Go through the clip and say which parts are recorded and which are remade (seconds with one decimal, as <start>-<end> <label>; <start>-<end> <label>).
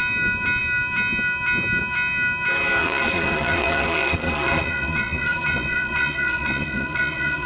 0.0-2.8 recorded; 2.8-7.5 remade